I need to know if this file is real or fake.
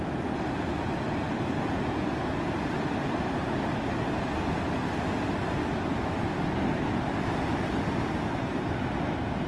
real